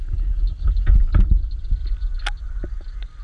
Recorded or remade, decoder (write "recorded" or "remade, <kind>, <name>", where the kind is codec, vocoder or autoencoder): recorded